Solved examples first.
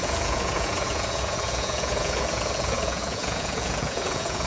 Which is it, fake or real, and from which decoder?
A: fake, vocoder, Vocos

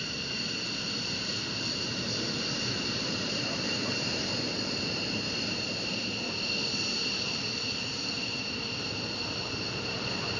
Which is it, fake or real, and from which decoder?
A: fake, vocoder, BigVGAN v2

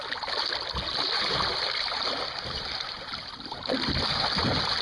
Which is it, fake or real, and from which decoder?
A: real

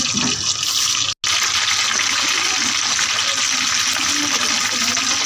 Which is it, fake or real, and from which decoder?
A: real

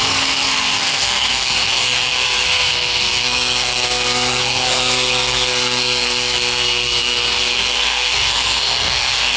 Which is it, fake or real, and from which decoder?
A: fake, codec, SNAC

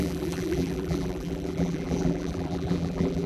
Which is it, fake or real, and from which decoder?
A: fake, vocoder, BigVGAN v2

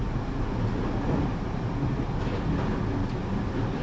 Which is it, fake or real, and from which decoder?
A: real